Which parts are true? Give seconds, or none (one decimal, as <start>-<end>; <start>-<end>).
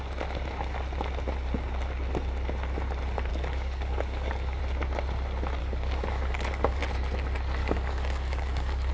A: 0.0-3.3; 4.6-5.6; 6.8-7.6